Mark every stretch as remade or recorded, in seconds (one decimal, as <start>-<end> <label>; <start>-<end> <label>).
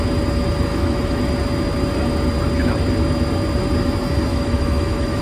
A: 0.0-0.7 recorded; 0.7-1.2 remade; 1.2-4.3 recorded; 4.3-5.2 remade